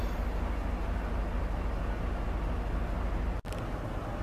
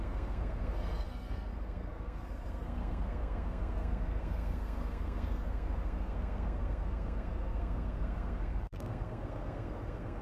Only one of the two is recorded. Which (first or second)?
first